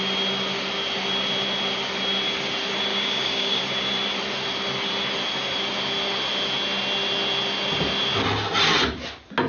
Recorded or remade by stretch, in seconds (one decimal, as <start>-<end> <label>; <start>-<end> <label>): 0.0-2.9 recorded; 2.9-3.6 remade; 3.6-9.5 recorded